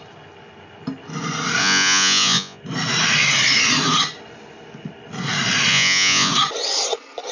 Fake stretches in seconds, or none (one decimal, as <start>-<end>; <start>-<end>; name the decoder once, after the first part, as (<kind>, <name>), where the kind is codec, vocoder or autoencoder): 1.6-2.6 (vocoder, Vocos); 5.7-6.3